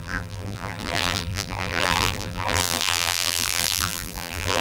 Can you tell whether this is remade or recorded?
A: remade